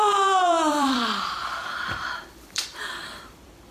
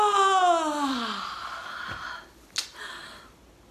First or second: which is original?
second